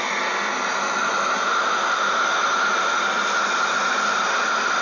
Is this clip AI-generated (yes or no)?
no